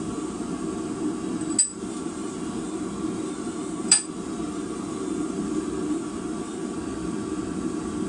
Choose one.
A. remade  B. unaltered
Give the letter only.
B